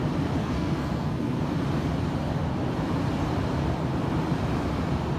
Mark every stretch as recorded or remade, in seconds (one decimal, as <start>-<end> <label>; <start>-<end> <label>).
0.0-0.4 recorded; 0.4-1.4 remade; 1.4-5.2 recorded